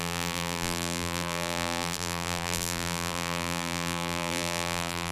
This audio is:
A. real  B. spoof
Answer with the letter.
B